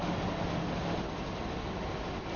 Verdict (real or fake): real